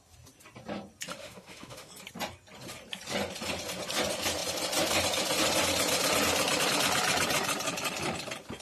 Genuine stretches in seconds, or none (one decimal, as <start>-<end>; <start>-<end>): 0.0-1.2; 1.9-8.6